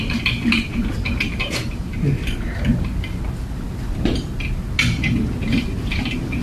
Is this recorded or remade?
recorded